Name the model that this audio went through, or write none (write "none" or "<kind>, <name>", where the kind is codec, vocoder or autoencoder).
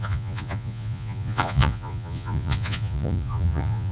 vocoder, Vocos